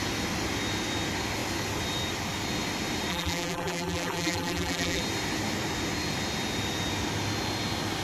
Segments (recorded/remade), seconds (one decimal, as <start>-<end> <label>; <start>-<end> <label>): 0.0-3.1 recorded; 3.1-5.0 remade; 5.0-8.0 recorded